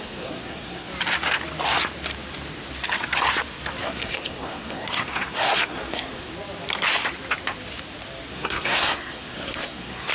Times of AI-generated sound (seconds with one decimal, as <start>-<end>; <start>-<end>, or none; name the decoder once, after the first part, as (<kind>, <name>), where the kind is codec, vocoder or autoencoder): 0.0-0.9 (codec, SNAC); 3.8-6.3; 8.3-10.1